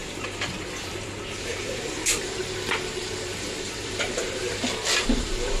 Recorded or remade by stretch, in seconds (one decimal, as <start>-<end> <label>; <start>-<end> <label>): 0.0-0.5 remade; 0.5-0.9 recorded; 0.9-2.4 remade; 2.4-3.0 recorded; 3.0-5.6 remade